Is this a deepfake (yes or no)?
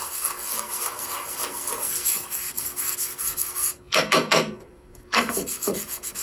yes